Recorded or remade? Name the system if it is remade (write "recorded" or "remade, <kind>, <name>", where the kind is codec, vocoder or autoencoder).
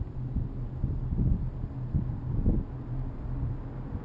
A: recorded